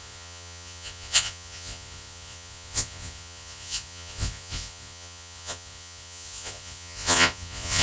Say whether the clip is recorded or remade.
remade